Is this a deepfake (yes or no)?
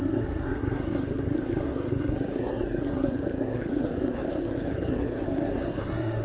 yes